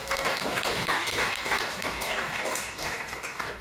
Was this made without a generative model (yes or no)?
no